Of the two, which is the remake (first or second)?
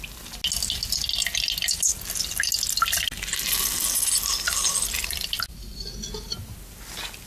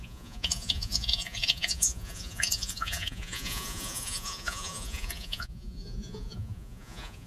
second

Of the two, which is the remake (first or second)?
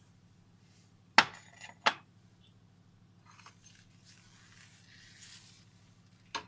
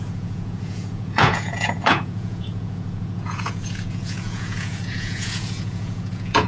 second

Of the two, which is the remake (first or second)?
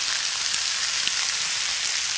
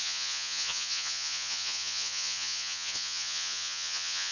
second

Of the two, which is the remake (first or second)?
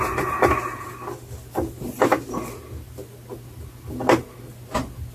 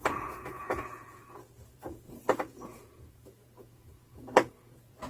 second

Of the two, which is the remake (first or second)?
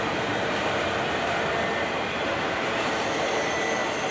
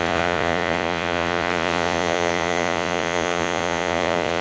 second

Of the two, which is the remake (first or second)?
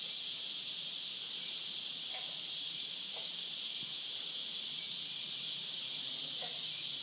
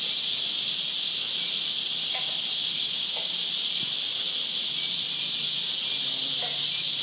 first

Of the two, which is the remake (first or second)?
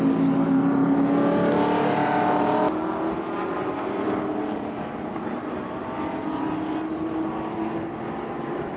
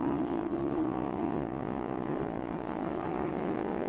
second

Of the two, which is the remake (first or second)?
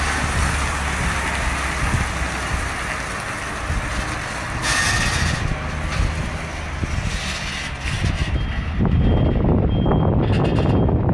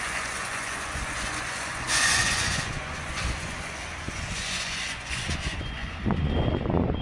second